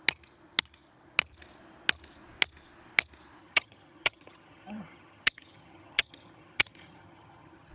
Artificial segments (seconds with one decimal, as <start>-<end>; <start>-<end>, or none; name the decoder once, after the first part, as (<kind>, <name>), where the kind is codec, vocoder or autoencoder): 3.4-7.7 (vocoder, HiFi-GAN)